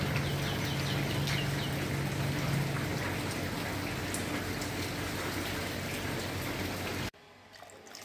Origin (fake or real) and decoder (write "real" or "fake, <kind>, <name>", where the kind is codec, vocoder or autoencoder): real